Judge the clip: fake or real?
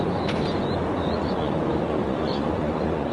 fake